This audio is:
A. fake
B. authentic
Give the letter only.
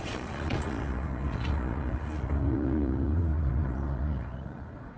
A